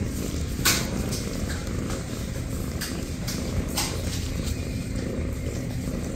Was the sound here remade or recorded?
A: remade